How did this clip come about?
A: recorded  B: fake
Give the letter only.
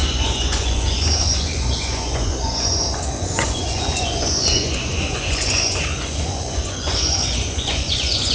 B